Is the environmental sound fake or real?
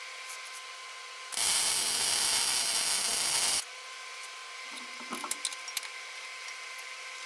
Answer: real